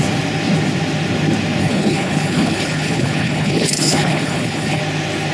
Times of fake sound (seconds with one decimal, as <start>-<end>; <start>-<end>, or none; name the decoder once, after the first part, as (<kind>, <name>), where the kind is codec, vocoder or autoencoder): 1.6-4.8 (codec, HILCodec)